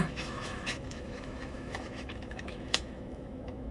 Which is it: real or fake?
fake